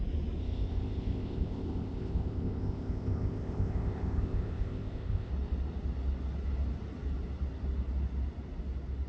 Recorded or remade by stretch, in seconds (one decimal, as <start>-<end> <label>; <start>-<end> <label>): 0.0-0.4 recorded; 0.4-5.3 remade; 5.3-9.1 recorded